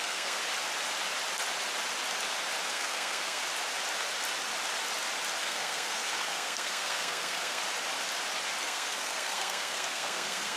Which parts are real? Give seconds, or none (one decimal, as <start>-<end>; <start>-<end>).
0.4-2.7; 3.4-5.4; 7.6-8.6